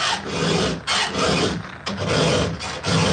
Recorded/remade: recorded